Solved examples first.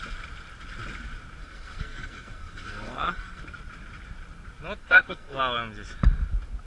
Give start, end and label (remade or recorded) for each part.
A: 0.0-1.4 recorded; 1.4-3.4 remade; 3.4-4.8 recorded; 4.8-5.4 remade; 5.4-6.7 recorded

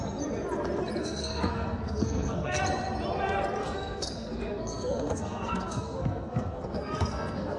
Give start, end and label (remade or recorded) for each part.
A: 0.0-1.0 recorded; 1.0-2.6 remade; 2.6-3.6 recorded; 3.6-7.6 remade

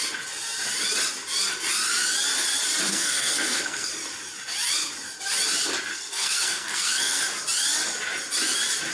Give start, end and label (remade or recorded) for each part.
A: 0.0-2.9 recorded; 2.9-3.9 remade; 3.9-5.9 recorded; 5.9-7.2 remade; 7.2-8.9 recorded

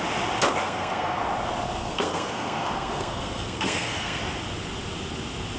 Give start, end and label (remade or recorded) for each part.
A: 0.0-0.6 recorded; 0.6-1.2 remade; 1.2-1.8 recorded; 1.8-4.2 remade; 4.2-5.6 recorded

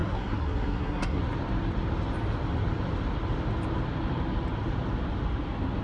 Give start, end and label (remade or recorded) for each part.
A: 0.0-1.2 remade; 1.2-5.8 recorded

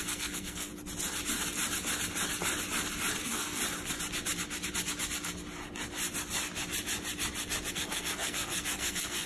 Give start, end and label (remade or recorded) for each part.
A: 0.0-0.7 remade; 0.7-3.2 recorded; 3.2-3.6 remade; 3.6-7.7 recorded; 7.7-9.3 remade

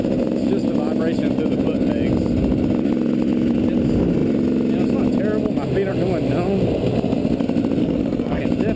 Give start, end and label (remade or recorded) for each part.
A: 0.0-7.8 recorded; 7.8-8.4 remade; 8.4-8.8 recorded